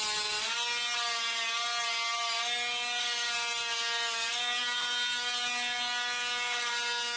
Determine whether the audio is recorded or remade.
recorded